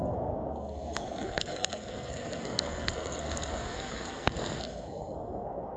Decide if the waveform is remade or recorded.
remade